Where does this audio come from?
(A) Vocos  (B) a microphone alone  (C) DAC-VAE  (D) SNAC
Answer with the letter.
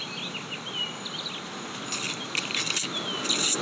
B